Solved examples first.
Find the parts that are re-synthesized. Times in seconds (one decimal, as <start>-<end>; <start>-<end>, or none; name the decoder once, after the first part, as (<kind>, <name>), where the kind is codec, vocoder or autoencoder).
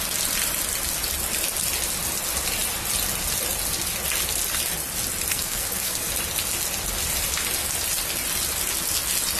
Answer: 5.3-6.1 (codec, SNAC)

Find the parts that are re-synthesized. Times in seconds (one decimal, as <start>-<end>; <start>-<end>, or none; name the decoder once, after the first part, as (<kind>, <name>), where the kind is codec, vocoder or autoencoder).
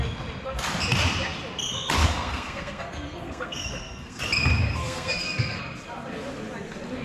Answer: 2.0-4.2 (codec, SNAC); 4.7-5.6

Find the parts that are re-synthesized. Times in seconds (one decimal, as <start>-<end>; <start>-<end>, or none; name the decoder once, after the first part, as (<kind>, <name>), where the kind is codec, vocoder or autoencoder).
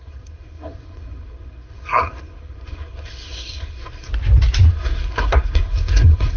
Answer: 0.0-4.1 (codec, SNAC); 4.7-6.4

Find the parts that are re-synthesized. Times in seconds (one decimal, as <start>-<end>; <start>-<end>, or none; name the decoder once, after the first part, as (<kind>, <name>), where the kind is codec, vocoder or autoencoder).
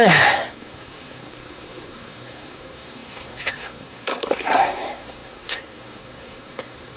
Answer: 0.0-7.0 (codec, SNAC)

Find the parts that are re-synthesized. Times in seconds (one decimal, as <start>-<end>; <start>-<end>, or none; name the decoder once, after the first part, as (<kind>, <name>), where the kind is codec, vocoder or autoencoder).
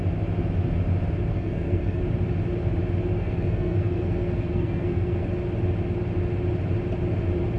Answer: 1.3-2.0 (codec, SNAC); 3.1-5.3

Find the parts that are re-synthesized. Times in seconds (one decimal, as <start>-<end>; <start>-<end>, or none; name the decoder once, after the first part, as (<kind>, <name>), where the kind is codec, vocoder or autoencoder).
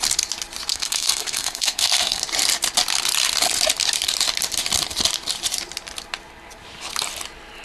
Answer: 0.7-2.2 (codec, SNAC)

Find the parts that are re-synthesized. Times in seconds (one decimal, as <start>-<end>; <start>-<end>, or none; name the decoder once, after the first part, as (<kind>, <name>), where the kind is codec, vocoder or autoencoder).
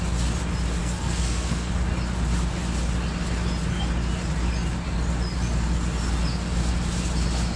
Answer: 0.8-1.7 (codec, SNAC)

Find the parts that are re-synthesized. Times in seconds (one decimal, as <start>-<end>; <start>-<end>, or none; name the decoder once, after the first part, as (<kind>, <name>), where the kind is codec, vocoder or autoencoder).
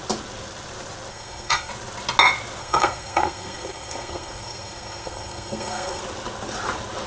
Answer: 1.1-1.7 (codec, SNAC); 2.6-6.0